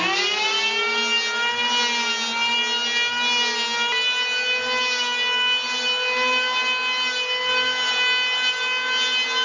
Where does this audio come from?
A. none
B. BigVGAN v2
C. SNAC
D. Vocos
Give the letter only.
A